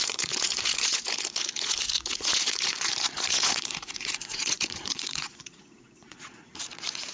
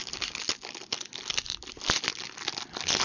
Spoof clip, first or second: first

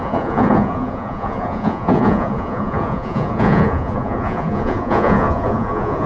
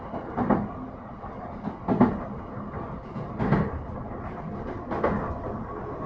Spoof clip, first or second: first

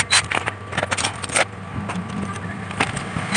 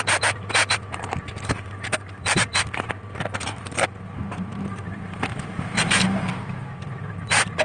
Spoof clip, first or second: second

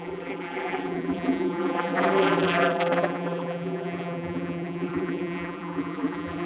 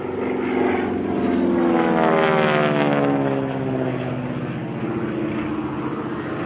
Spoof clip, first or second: first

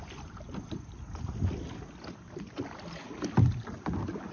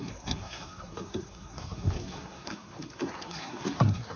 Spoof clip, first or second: second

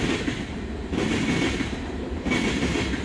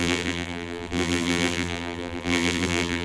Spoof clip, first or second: second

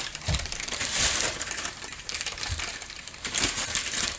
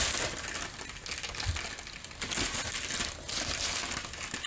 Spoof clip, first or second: first